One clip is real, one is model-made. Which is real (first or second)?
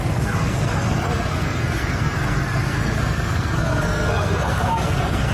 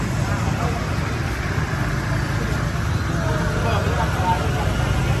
second